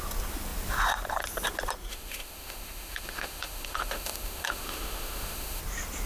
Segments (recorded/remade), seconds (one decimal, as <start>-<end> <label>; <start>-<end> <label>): 0.0-1.9 recorded; 1.9-5.6 remade; 5.6-6.1 recorded